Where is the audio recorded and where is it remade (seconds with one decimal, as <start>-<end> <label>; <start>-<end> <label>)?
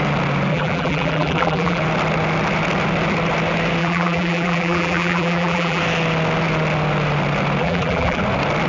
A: 0.0-0.5 recorded; 0.5-1.8 remade; 1.8-3.8 recorded; 3.8-5.8 remade; 5.8-7.6 recorded; 7.6-8.2 remade; 8.2-8.7 recorded